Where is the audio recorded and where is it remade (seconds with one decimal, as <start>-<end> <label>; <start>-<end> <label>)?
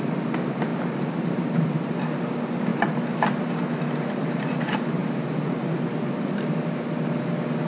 0.0-7.7 recorded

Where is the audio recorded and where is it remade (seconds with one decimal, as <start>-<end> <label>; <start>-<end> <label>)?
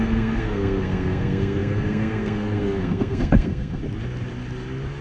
0.0-3.8 remade; 3.8-5.0 recorded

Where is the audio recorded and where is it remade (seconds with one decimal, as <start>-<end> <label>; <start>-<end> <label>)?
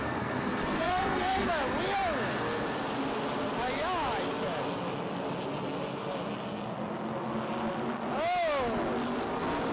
0.0-1.5 remade; 1.5-9.7 recorded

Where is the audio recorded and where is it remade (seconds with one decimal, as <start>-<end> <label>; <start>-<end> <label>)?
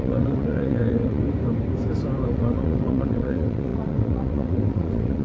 0.0-1.2 remade; 1.2-2.3 recorded; 2.3-5.2 remade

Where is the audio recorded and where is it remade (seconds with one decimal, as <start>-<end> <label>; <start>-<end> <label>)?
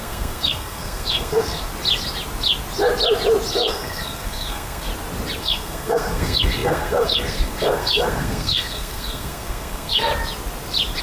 0.0-1.7 remade; 1.7-3.5 recorded; 3.5-4.9 remade; 4.9-5.4 recorded; 5.4-10.1 remade; 10.1-11.0 recorded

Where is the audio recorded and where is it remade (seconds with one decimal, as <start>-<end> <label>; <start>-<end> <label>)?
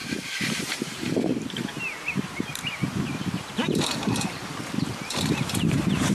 0.0-2.6 remade; 2.6-3.5 recorded; 3.5-4.4 remade; 4.4-4.9 recorded; 4.9-6.1 remade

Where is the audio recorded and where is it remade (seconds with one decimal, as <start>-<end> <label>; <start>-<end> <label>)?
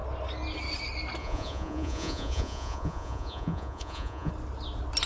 0.0-1.2 recorded; 1.2-4.3 remade; 4.3-5.1 recorded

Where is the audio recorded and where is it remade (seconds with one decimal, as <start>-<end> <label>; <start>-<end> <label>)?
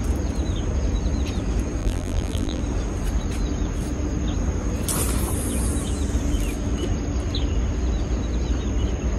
0.0-1.8 recorded; 1.8-2.6 remade; 2.6-9.2 recorded